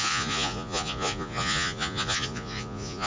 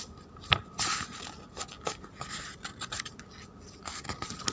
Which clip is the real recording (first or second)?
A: second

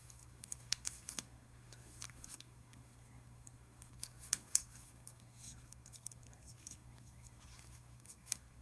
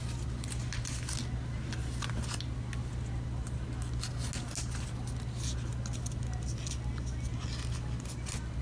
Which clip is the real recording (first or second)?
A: second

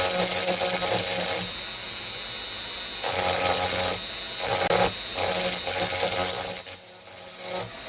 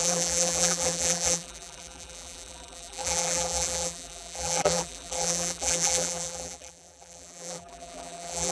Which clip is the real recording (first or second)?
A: first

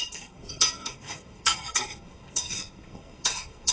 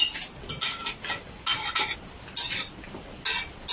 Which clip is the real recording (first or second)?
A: second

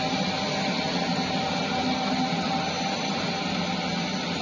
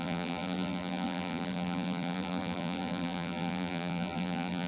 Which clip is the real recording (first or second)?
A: first